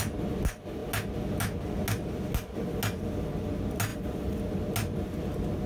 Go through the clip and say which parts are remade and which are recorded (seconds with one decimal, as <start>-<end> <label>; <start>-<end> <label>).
0.0-3.9 recorded; 3.9-4.4 remade; 4.4-5.7 recorded